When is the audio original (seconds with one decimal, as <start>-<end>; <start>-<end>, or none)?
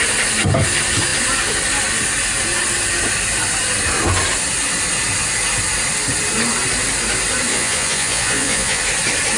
0.0-7.5; 8.8-9.4